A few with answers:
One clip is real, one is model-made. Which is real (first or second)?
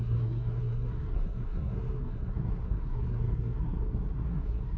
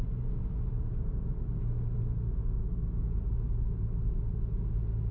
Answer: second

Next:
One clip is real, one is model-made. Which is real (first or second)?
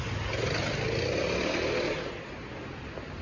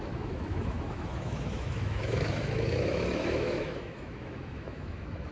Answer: first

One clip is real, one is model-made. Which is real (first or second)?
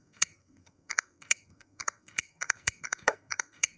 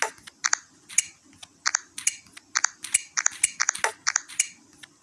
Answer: second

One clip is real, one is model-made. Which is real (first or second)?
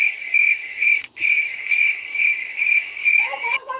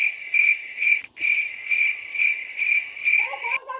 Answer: second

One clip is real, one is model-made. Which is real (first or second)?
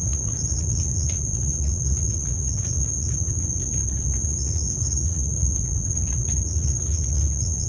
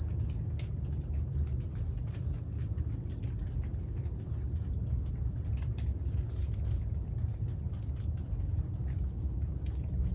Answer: second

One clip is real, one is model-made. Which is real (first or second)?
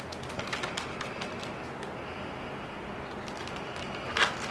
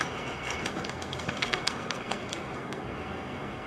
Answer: first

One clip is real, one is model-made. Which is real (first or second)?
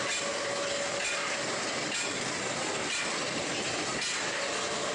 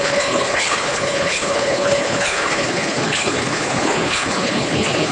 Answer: first